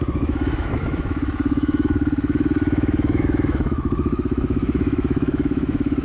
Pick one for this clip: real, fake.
fake